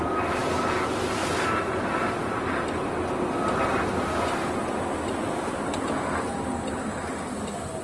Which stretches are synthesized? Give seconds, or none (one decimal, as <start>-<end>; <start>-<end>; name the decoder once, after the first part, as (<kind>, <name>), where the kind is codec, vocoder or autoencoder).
none